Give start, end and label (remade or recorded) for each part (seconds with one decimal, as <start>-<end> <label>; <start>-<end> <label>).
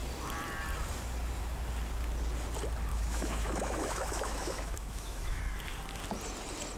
0.0-2.9 recorded; 2.9-5.4 remade; 5.4-6.8 recorded